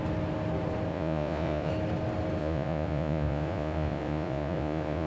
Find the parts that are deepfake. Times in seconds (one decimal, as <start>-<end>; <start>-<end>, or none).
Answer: 0.9-1.7; 2.4-5.1